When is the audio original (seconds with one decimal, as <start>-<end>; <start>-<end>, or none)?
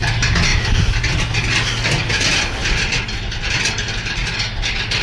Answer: 0.0-5.0